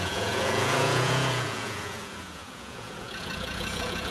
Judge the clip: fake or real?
fake